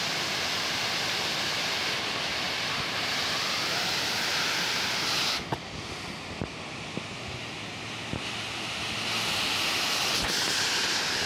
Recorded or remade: recorded